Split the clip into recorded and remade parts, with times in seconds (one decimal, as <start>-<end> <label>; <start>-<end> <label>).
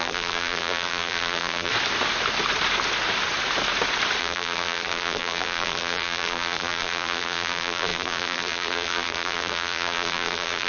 0.0-1.7 remade; 1.7-4.2 recorded; 4.2-10.7 remade